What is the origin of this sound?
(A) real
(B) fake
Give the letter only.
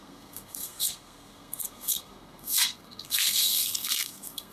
B